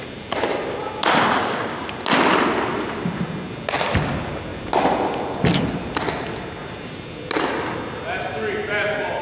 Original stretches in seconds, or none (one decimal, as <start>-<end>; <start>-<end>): 0.0-1.4; 1.9-9.2